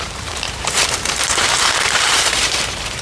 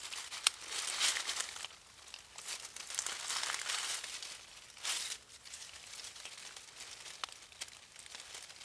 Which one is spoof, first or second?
first